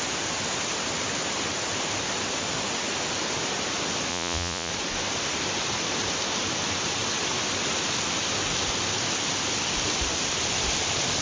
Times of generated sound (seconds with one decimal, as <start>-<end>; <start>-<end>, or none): 4.1-4.7